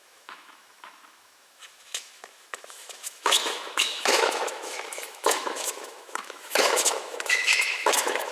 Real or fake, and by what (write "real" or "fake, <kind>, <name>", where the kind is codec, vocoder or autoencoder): fake, autoencoder, DAC-VAE